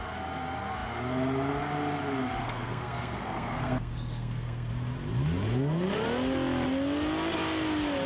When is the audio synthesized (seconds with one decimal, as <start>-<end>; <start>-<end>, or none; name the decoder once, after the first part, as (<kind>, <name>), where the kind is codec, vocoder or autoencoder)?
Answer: 2.4-4.7 (codec, SNAC)